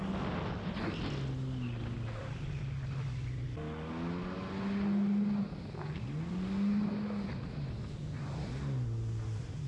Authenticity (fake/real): real